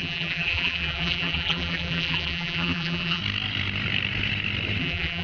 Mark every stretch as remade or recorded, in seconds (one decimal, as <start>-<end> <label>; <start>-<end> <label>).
0.0-3.2 remade; 3.2-4.8 recorded; 4.8-5.2 remade